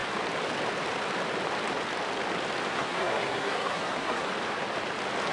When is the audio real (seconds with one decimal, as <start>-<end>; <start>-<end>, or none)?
0.0-2.7; 4.3-5.3